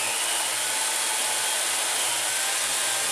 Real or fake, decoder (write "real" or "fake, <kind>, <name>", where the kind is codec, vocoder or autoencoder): real